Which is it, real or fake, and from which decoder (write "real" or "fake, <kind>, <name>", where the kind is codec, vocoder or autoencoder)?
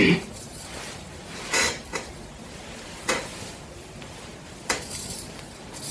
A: real